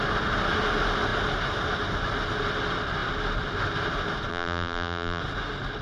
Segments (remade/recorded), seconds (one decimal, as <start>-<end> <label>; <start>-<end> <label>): 0.0-4.3 recorded; 4.3-5.2 remade; 5.2-5.8 recorded

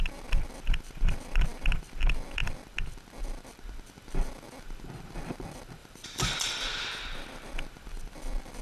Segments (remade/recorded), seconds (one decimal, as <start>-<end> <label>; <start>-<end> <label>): 0.0-5.8 recorded; 5.8-6.8 remade; 6.8-8.6 recorded

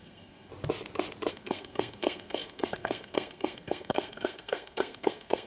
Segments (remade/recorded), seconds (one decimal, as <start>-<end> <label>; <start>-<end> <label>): 0.0-0.5 remade; 0.5-1.3 recorded; 1.3-5.5 remade

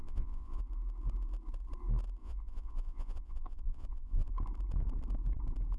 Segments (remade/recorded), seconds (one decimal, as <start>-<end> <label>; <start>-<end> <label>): 0.0-0.6 remade; 0.6-2.2 recorded; 2.2-4.3 remade; 4.3-5.8 recorded

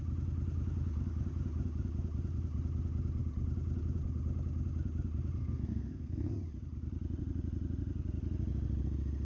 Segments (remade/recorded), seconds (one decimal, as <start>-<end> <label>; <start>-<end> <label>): 0.0-5.4 recorded; 5.4-6.3 remade; 6.3-9.2 recorded